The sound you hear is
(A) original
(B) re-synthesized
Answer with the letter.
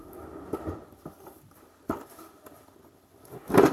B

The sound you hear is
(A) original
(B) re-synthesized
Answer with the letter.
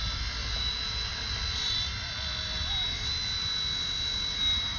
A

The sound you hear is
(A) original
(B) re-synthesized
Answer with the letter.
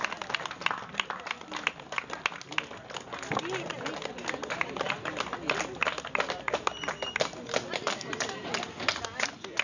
A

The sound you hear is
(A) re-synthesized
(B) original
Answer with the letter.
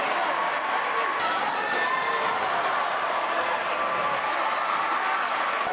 B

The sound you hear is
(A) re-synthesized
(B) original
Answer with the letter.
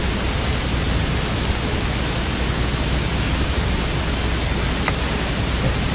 B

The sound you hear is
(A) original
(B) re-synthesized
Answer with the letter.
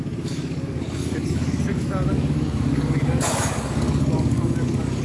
B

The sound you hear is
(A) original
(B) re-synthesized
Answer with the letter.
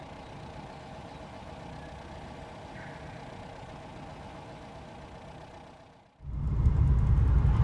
A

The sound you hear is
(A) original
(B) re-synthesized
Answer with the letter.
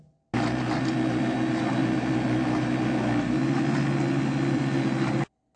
A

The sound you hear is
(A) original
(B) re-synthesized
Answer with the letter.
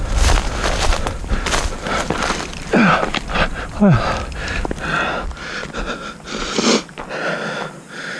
A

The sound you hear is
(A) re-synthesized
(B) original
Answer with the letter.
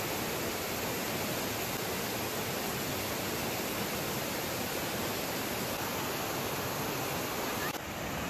B